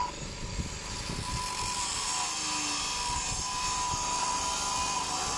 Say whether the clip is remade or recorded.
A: recorded